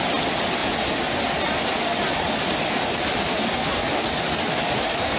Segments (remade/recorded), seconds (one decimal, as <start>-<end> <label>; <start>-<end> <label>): 0.0-3.8 recorded; 3.8-5.2 remade